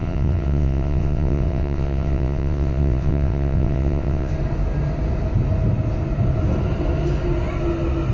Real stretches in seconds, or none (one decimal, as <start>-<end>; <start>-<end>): 4.3-8.1